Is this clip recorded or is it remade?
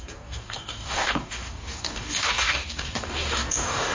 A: remade